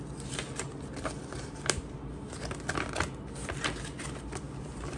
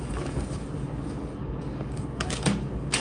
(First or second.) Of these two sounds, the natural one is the first